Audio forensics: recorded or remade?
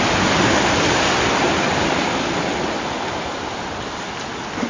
recorded